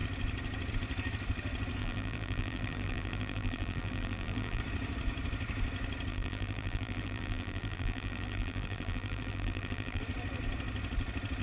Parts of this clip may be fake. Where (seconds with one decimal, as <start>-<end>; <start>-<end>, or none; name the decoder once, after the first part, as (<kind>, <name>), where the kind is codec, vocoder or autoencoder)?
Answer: 1.8-4.6 (vocoder, BigVGAN v2); 6.1-10.0